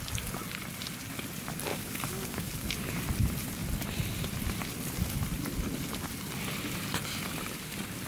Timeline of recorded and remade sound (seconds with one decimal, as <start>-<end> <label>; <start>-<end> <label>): 0.0-1.7 recorded; 1.7-3.0 remade; 3.0-8.1 recorded